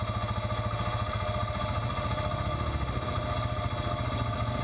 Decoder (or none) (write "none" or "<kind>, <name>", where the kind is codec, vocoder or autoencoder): none